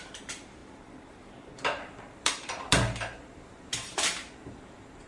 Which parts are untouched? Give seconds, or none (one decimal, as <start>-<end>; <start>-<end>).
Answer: none